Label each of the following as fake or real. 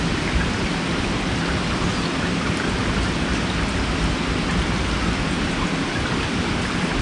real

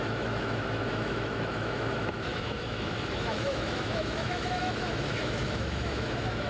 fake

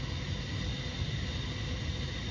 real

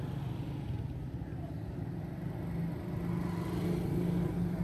real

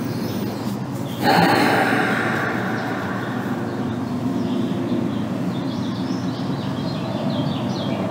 real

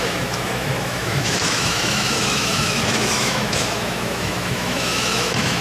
fake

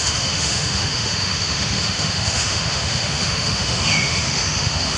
fake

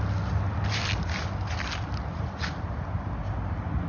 real